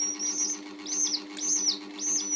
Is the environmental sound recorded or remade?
recorded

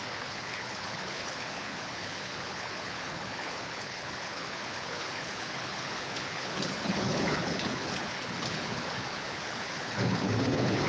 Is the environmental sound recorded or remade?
remade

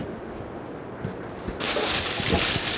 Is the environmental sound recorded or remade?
recorded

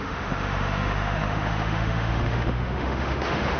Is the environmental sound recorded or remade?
remade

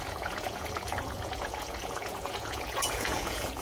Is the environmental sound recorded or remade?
remade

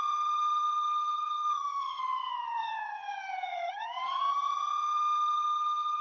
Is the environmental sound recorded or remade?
remade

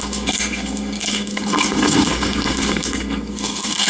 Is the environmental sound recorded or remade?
remade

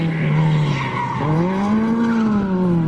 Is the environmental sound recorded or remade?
recorded